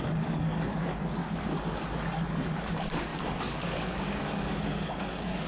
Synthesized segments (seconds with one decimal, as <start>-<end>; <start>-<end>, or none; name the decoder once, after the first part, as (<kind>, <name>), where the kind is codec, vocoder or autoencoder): 0.0-5.5 (codec, DAC)